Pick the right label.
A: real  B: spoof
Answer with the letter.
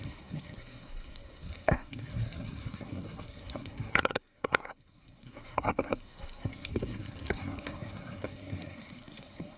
B